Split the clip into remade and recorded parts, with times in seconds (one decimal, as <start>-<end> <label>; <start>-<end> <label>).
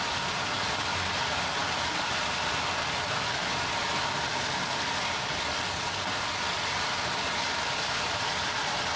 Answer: 0.0-9.0 recorded